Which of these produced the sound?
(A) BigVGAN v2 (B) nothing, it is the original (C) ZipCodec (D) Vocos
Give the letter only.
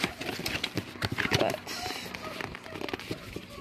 B